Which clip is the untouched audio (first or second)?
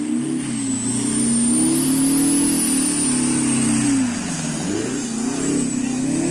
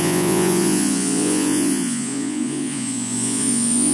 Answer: first